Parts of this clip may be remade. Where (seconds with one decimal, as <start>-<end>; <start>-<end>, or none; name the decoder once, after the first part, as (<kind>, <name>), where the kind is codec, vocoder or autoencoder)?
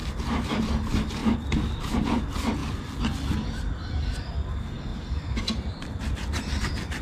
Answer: 0.0-0.7 (vocoder, BigVGAN v2); 4.9-6.6